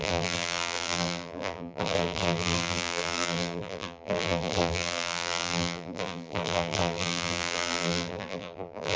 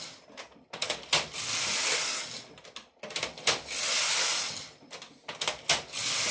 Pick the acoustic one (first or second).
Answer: second